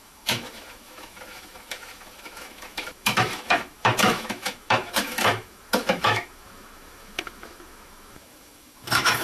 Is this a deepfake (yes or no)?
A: yes